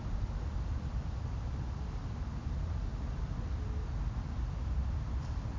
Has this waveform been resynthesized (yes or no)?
no